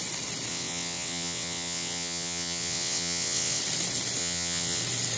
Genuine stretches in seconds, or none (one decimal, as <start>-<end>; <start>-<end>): 0.0-0.5; 3.6-4.2; 4.8-5.2